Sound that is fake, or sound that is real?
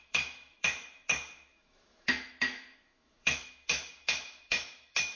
fake